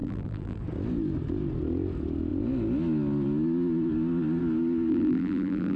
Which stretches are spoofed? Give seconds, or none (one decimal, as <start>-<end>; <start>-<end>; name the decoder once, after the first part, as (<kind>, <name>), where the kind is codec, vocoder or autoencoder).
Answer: 0.0-0.6 (vocoder, BigVGAN v2); 4.9-5.8